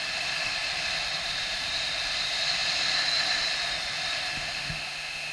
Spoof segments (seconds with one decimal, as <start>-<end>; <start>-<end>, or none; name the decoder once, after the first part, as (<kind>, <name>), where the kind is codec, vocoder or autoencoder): 4.4-5.3 (autoencoder, DAC-VAE)